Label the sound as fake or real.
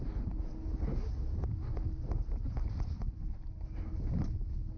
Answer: real